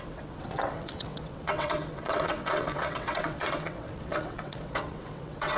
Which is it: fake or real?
fake